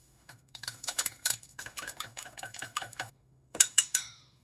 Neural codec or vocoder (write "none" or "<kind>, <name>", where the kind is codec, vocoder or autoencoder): autoencoder, DAC-VAE